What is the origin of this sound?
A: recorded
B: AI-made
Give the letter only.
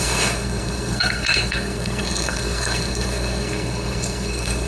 B